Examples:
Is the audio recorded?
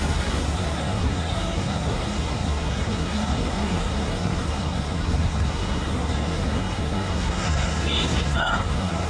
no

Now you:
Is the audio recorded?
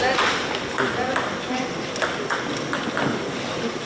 yes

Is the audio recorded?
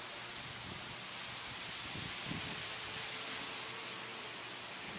yes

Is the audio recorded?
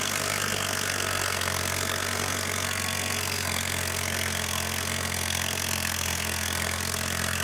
no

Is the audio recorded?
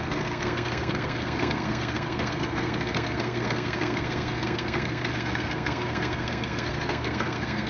no